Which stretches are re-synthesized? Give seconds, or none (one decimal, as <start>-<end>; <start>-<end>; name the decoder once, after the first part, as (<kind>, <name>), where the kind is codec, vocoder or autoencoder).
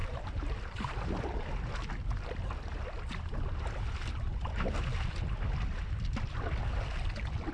0.0-1.0 (vocoder, BigVGAN v2)